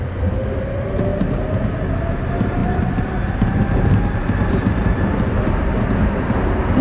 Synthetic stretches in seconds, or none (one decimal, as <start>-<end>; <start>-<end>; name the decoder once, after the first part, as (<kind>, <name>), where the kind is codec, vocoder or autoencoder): none